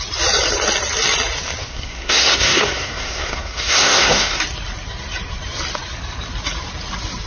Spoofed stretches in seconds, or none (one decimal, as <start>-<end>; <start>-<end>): 1.7-4.4

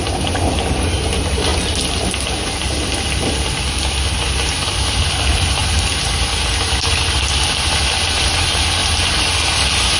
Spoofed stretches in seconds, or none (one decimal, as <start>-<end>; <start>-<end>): none

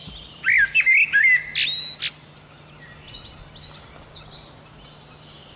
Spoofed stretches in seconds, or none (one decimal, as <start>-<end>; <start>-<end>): none

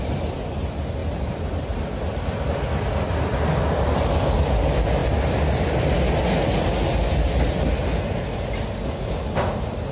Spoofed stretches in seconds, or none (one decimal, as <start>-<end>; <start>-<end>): none

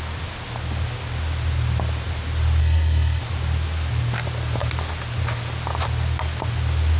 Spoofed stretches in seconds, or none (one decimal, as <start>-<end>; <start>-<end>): 2.6-3.2

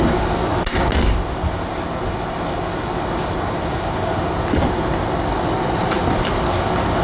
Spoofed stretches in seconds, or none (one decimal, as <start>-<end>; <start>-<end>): none

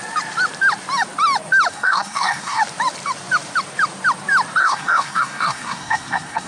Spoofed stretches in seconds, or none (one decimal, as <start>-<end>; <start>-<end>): 1.7-2.6; 4.6-6.5

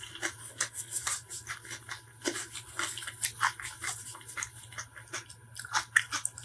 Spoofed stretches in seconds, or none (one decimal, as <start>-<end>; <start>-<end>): 0.4-1.0